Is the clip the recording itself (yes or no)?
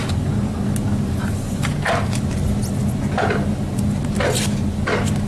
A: yes